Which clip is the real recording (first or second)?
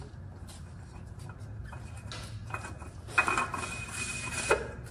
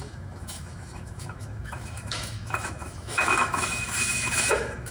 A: first